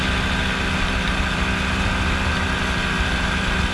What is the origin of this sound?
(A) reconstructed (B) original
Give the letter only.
B